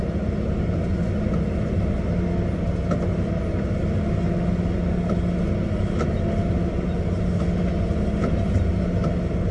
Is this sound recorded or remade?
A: recorded